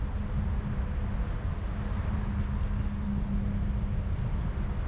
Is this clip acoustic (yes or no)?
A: yes